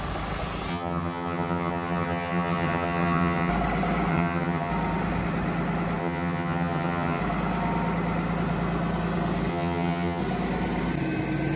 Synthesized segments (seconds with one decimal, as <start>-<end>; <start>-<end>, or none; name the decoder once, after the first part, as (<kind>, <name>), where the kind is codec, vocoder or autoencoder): 0.7-3.5 (vocoder, HiFi-GAN); 4.1-4.7; 6.0-7.2; 9.5-10.2